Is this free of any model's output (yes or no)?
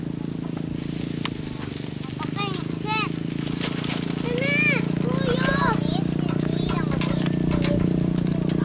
yes